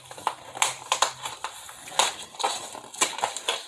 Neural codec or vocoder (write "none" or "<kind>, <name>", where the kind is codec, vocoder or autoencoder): none